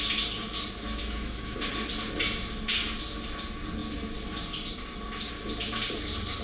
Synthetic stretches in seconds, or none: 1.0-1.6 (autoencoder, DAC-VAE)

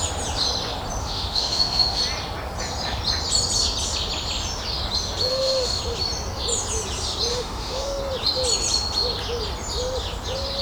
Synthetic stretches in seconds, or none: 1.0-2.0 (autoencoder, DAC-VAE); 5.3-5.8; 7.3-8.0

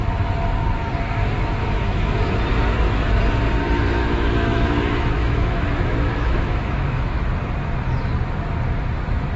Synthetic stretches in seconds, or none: 1.6-2.3 (autoencoder, DAC-VAE); 4.0-7.2

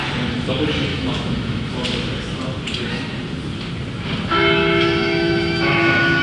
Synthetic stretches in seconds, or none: 0.9-1.7 (autoencoder, DAC-VAE); 4.3-6.2

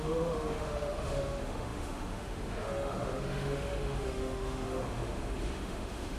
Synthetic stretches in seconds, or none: 0.0-6.2 (autoencoder, DAC-VAE)

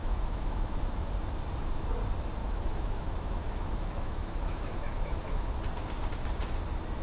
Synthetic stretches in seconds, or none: 0.0-1.1 (autoencoder, DAC-VAE); 2.4-5.5